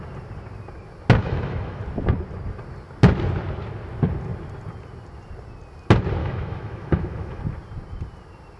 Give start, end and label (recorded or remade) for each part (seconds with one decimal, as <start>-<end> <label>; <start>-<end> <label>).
0.0-1.2 recorded; 1.2-1.8 remade; 1.8-6.2 recorded; 6.2-7.4 remade; 7.4-8.6 recorded